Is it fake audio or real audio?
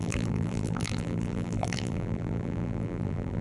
fake